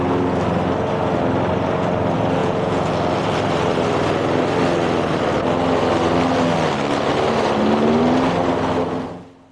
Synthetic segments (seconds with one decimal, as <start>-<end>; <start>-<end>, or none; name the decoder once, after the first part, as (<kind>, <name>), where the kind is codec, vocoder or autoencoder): 2.4-2.9 (vocoder, Vocos)